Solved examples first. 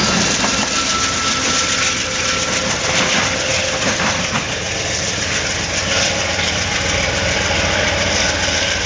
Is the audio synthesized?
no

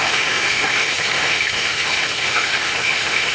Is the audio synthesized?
yes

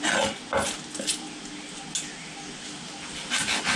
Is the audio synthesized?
no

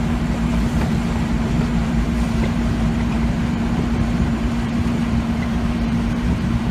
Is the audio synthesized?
yes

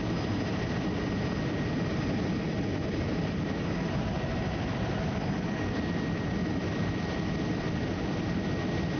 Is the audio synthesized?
no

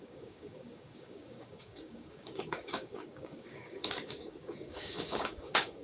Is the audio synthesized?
yes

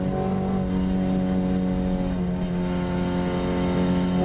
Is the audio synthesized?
no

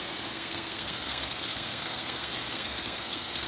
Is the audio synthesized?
yes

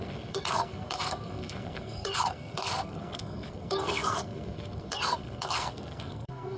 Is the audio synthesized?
yes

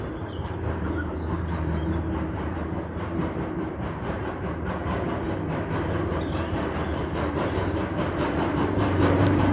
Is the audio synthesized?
yes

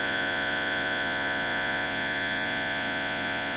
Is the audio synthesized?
yes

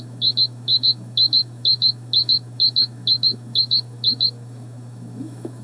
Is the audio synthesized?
yes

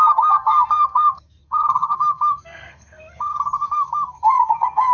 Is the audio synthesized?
yes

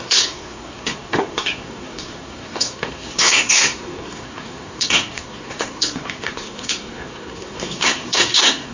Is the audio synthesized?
yes